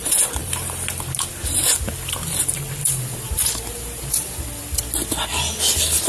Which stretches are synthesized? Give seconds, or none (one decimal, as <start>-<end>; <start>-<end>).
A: 2.8-4.4